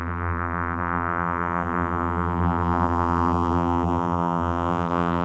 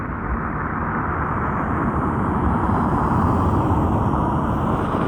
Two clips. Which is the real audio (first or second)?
second